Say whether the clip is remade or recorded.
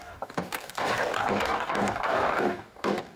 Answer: remade